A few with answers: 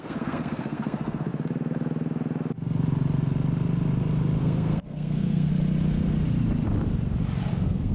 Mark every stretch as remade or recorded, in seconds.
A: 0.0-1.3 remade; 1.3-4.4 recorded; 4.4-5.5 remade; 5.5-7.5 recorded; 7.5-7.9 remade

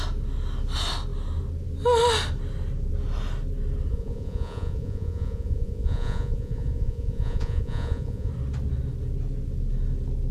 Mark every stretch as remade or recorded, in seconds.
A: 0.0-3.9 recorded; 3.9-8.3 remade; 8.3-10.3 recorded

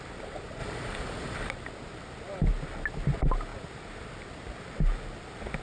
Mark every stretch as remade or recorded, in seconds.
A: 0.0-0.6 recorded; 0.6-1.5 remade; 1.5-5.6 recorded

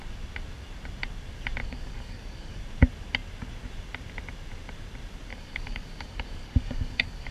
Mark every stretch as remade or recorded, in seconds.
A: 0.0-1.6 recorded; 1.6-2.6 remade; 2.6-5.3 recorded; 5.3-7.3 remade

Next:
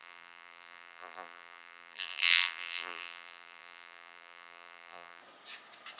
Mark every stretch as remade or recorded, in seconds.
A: 0.0-5.2 remade; 5.2-6.0 recorded